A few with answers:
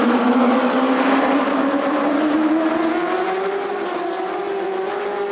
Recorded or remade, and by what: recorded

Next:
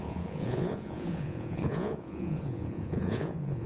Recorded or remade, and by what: remade, vocoder, Vocos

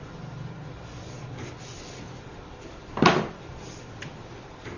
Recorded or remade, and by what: recorded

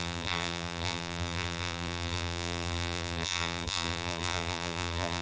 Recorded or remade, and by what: remade, vocoder, BigVGAN v2